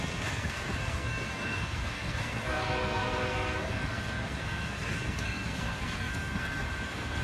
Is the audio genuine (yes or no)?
no